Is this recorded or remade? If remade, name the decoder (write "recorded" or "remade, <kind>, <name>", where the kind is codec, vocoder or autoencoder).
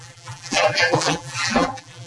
remade, vocoder, BigVGAN v2